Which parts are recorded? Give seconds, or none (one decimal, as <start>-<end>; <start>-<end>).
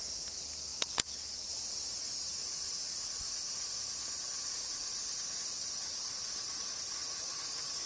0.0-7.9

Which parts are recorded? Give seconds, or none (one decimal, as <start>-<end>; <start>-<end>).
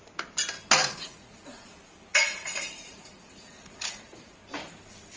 0.0-0.8; 1.7-2.1; 4.4-5.2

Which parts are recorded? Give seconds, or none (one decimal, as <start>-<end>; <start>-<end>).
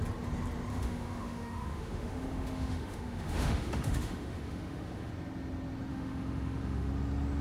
0.0-0.7; 5.1-5.9; 6.9-7.4